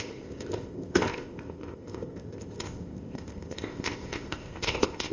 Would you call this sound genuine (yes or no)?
no